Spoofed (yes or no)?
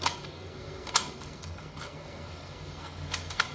yes